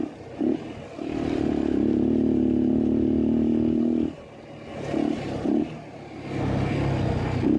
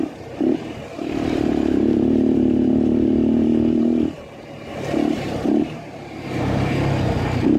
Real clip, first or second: first